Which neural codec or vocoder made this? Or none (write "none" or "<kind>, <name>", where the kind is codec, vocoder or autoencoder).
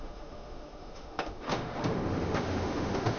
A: autoencoder, DAC-VAE